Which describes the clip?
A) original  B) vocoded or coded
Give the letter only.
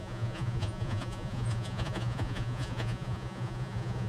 B